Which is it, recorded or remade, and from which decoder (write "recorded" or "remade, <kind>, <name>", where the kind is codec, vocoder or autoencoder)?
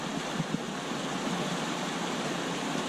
recorded